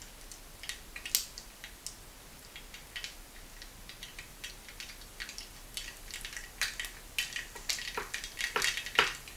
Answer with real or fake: real